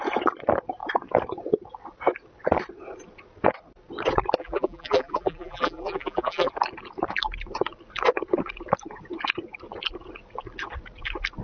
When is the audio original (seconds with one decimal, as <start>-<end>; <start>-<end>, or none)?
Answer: 0.0-4.4; 6.5-11.4